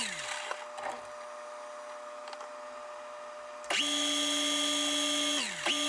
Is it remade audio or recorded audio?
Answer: recorded